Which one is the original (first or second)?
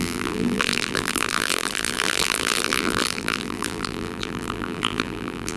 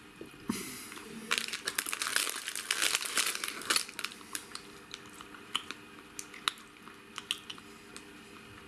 second